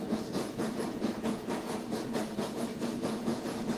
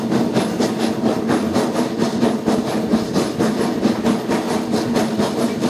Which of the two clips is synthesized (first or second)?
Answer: first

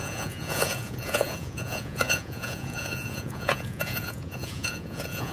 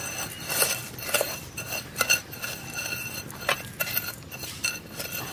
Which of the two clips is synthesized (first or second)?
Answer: first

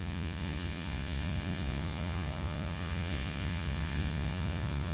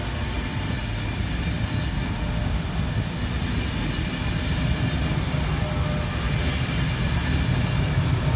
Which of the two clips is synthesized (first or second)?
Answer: first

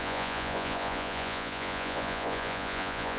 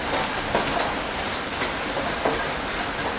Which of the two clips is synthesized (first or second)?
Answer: first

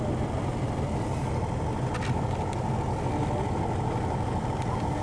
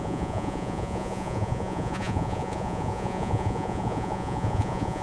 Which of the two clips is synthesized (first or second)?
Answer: second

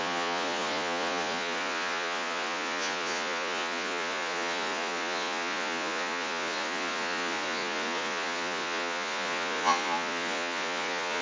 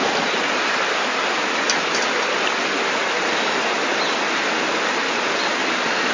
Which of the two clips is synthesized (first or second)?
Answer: first